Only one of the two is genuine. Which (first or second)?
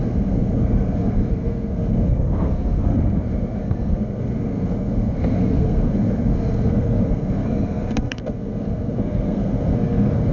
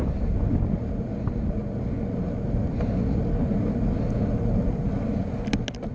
second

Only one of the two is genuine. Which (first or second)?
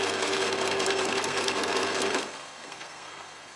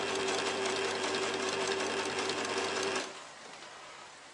second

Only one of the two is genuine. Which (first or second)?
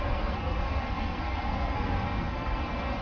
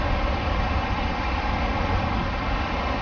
second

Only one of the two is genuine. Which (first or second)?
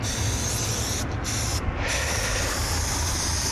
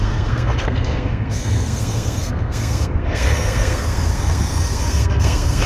first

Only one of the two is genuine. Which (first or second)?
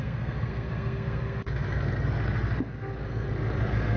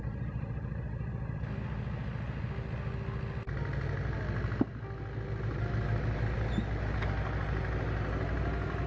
second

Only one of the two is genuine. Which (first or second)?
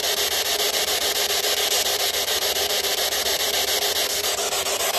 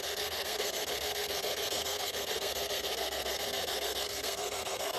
first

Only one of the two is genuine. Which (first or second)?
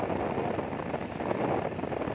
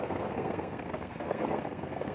first